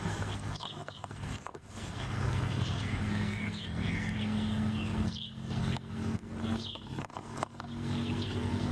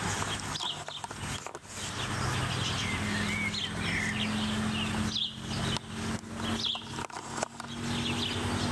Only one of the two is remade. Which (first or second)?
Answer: first